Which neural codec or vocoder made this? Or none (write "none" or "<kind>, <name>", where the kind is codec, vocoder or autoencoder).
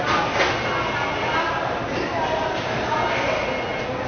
none